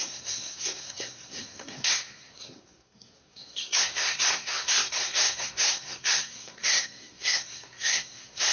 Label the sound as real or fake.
fake